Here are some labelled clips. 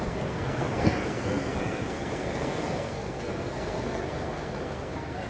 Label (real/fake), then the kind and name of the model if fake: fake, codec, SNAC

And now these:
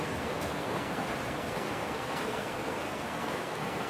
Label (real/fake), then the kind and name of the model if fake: fake, codec, SNAC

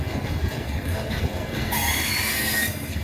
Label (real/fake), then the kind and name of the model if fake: fake, codec, SNAC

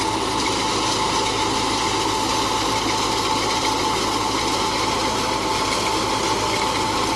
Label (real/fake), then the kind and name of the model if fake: real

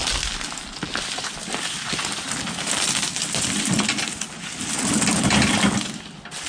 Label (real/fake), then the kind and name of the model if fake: real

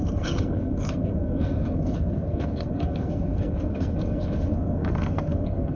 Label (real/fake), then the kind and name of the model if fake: fake, codec, SNAC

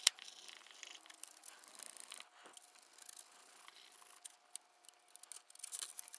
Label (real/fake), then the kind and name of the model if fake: real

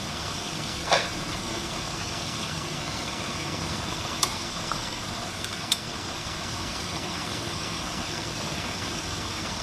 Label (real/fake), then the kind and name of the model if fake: fake, codec, SNAC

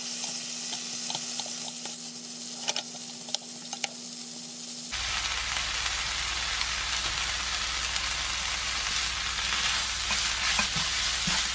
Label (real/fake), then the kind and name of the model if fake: real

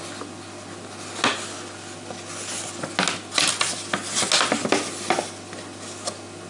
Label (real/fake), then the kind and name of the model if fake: real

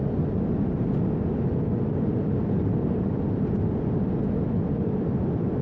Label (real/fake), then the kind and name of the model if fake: real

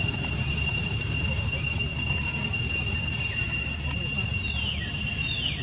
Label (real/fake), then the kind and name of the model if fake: real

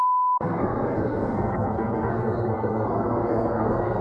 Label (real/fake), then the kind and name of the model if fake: fake, codec, SNAC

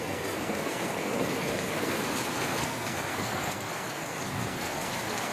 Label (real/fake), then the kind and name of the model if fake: fake, codec, SNAC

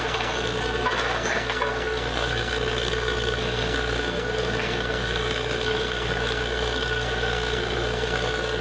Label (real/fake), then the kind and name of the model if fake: fake, codec, SNAC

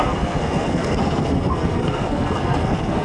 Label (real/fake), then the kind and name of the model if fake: fake, codec, SNAC